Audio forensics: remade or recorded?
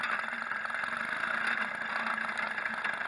recorded